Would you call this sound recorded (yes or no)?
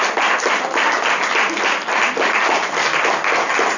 yes